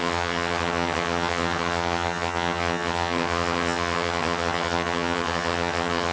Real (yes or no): no